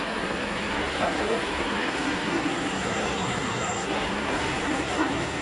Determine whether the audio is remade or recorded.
remade